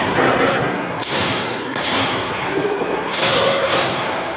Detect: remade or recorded remade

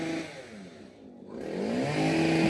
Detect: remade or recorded recorded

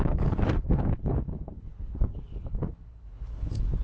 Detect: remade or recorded remade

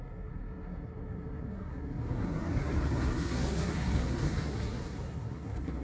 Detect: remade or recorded remade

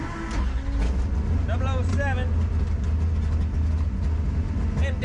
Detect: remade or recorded recorded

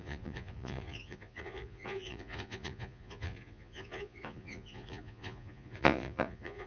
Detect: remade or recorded remade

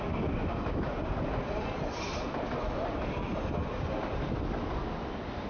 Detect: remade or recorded recorded